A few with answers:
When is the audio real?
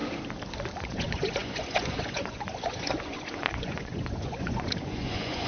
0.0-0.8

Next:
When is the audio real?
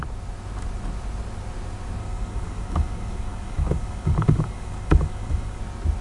0.0-2.0; 5.6-6.0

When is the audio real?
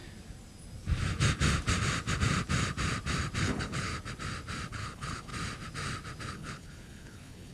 0.0-3.4; 3.9-4.7; 5.3-6.3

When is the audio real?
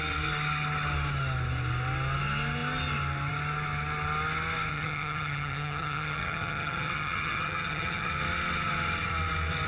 0.0-4.7; 8.1-9.7